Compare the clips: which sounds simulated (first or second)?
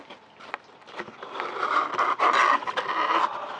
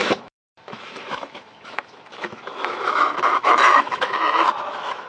second